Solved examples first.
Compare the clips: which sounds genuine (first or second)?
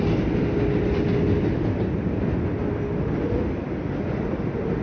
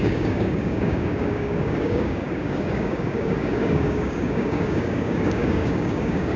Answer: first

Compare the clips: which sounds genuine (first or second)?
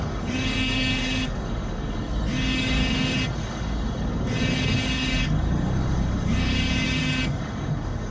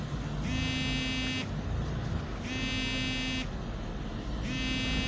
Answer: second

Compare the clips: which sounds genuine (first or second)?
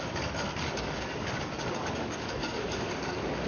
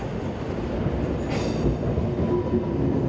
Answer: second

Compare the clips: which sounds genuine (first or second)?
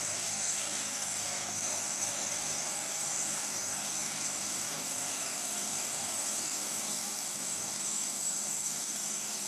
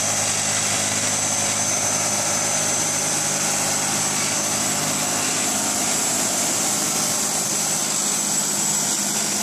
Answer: second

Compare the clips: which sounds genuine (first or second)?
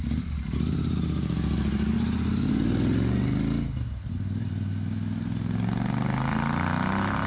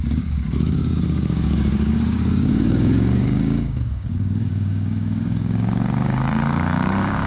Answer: first